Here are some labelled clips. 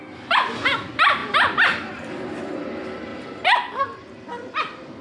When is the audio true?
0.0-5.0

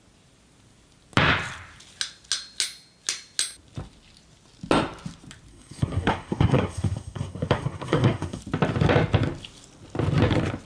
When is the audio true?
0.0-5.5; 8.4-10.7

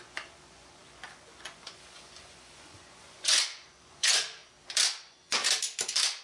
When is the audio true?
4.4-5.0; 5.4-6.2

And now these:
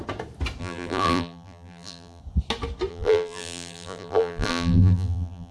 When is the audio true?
0.0-0.6; 2.2-2.9

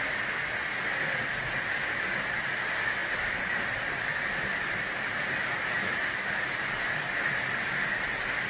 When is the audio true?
0.0-3.0; 5.6-8.5